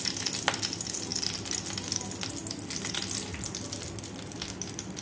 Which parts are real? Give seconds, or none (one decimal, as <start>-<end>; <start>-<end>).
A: 0.0-5.0